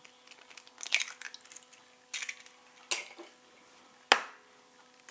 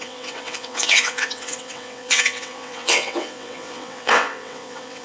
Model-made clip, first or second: second